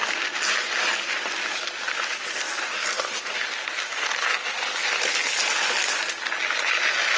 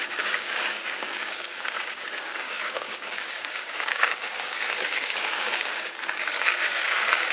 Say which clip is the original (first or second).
first